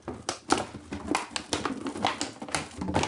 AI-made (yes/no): no